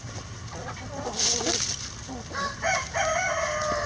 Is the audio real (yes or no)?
yes